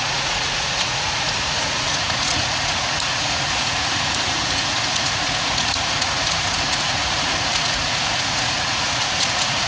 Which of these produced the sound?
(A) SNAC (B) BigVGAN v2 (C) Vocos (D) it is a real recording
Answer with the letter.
C